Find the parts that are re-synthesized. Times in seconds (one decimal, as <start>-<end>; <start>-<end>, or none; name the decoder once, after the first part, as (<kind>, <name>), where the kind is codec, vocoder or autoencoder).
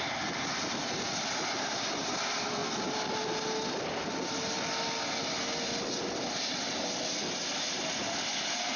none